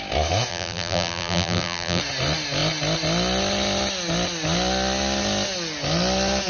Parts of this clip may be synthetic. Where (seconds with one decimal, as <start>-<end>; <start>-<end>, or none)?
0.5-2.0